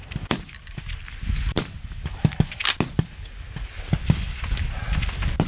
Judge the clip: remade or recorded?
recorded